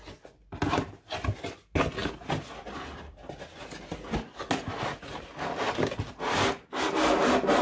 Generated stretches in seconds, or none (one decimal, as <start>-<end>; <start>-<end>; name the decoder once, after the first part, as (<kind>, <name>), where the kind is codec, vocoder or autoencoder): none